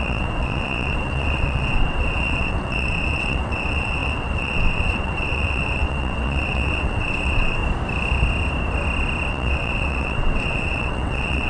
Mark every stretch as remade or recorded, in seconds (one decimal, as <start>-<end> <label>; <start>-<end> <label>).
0.0-7.6 remade; 7.6-9.3 recorded; 9.3-11.5 remade